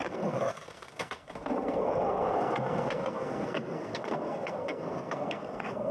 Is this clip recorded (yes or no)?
no